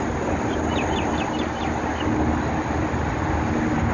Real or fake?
real